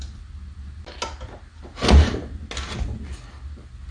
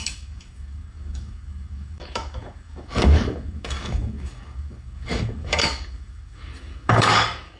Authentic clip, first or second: first